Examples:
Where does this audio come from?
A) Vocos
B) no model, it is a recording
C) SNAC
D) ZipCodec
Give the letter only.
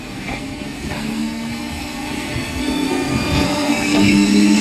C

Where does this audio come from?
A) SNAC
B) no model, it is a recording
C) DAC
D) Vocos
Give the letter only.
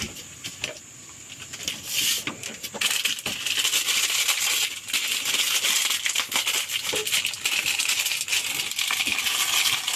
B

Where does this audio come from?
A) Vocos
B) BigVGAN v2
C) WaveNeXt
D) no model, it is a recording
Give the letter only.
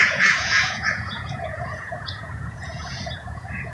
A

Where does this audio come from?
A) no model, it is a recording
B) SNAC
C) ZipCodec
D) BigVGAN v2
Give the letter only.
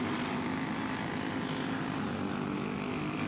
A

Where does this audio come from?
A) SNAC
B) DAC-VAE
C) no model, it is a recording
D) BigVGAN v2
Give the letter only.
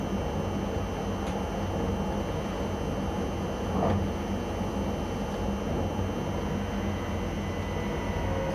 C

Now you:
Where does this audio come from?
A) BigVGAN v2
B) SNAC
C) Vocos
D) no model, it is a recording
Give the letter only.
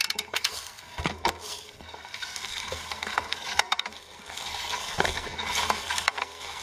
B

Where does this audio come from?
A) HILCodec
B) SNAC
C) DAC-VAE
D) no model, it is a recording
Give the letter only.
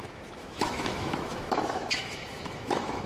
C